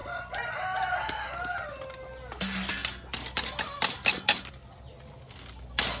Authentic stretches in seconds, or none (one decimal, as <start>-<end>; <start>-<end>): 1.0-6.0